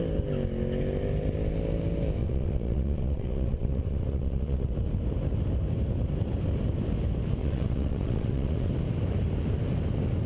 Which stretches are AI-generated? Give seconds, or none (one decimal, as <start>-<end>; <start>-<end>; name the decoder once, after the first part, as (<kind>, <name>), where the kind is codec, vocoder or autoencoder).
2.2-4.7 (vocoder, WaveNeXt); 7.4-8.7